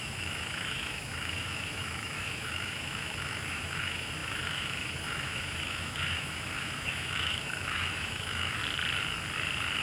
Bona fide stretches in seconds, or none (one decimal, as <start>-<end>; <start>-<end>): 8.6-9.8